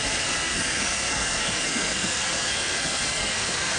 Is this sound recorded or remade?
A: remade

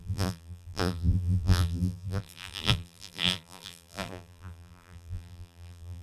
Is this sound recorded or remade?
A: remade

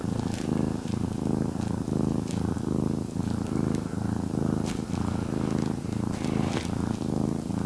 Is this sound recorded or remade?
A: recorded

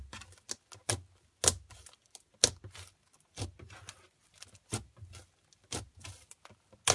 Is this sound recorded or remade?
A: recorded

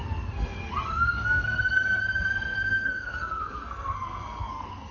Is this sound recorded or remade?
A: remade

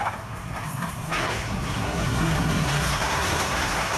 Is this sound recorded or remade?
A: remade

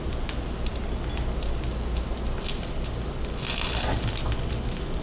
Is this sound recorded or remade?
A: recorded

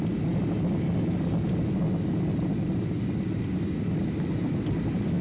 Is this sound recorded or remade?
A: recorded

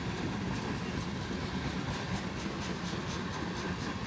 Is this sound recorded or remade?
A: recorded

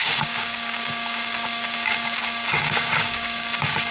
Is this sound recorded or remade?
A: remade